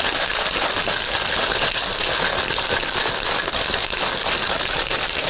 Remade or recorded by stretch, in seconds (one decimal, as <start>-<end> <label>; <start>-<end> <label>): 0.0-4.4 recorded; 4.4-5.3 remade